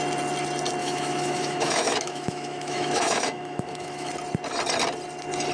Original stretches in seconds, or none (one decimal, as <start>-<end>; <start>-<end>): 0.0-0.8; 4.1-5.5